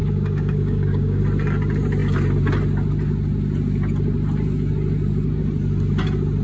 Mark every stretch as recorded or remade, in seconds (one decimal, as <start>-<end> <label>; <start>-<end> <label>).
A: 0.0-1.2 remade; 1.2-6.4 recorded